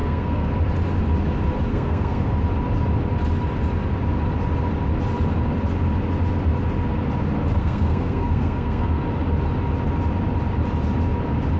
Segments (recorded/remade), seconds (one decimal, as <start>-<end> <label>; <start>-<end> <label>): 0.0-0.5 remade; 0.5-1.7 recorded; 1.7-2.3 remade; 2.3-7.6 recorded; 7.6-9.0 remade; 9.0-11.6 recorded

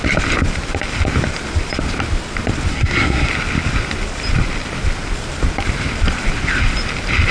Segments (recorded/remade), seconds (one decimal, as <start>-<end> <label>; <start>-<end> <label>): 0.0-2.7 recorded; 2.7-3.3 remade; 3.3-7.3 recorded

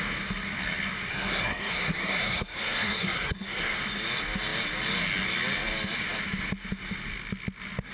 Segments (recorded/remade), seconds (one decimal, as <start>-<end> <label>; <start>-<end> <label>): 0.0-1.1 recorded; 1.1-3.8 remade; 3.8-7.9 recorded

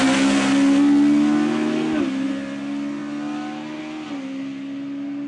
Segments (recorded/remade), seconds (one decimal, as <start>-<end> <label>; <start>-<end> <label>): 0.0-5.3 recorded

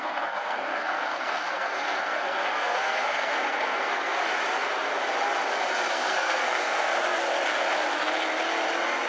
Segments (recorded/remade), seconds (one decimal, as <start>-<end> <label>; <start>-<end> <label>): 0.0-4.2 remade; 4.2-5.9 recorded; 5.9-6.9 remade; 6.9-9.1 recorded

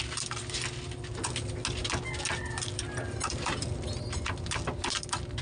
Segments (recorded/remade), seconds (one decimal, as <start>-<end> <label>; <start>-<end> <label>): 0.0-5.4 recorded

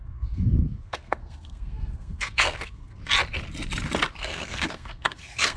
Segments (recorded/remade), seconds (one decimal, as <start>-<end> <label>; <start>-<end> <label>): 0.0-3.0 remade; 3.0-4.1 recorded; 4.1-5.6 remade